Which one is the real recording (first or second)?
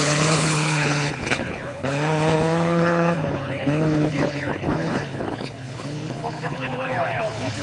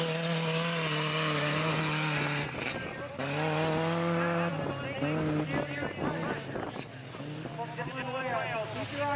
second